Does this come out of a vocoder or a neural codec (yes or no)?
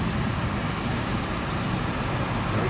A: no